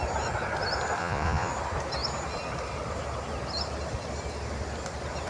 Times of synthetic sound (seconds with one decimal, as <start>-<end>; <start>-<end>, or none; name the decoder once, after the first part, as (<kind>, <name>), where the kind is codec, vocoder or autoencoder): 1.0-1.5 (vocoder, Vocos)